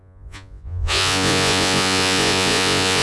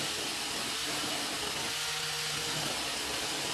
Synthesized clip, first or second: first